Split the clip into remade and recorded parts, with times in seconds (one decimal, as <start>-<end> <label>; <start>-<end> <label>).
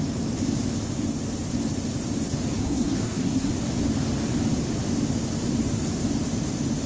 0.0-2.6 recorded; 2.6-3.5 remade; 3.5-6.9 recorded